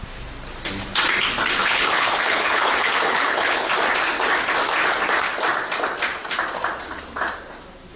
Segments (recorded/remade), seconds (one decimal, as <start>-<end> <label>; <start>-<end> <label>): 0.0-1.6 recorded; 1.6-3.7 remade; 3.7-8.0 recorded